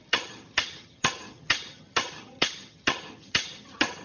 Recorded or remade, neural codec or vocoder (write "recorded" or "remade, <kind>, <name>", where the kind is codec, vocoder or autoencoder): remade, vocoder, HiFi-GAN